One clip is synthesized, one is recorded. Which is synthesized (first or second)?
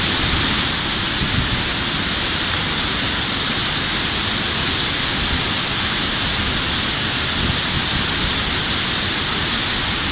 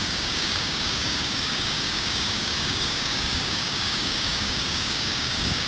second